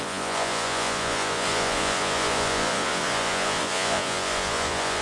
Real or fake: fake